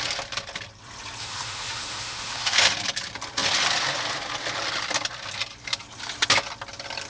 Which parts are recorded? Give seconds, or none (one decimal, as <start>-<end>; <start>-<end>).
0.0-1.2; 2.7-7.1